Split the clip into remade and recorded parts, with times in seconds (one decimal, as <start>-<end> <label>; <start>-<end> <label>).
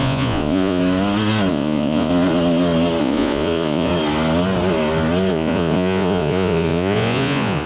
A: 0.0-0.8 remade; 0.8-1.5 recorded; 1.5-2.1 remade; 2.1-3.0 recorded; 3.0-3.9 remade; 3.9-5.3 recorded; 5.3-7.7 remade